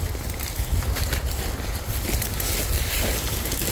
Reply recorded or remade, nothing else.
recorded